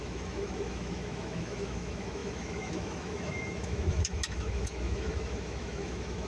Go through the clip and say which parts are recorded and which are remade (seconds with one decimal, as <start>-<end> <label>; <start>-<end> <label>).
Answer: 0.0-6.3 remade